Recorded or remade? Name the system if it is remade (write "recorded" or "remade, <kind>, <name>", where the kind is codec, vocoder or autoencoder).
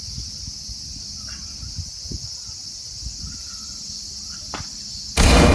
recorded